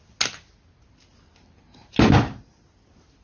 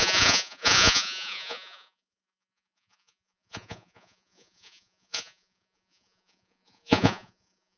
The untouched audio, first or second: first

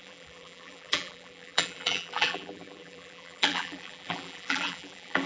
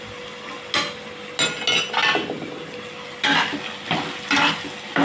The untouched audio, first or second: second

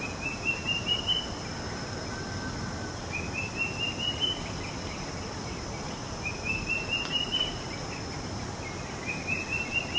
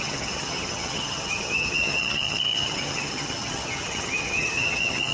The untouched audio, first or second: first